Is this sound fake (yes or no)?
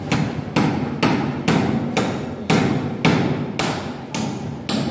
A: no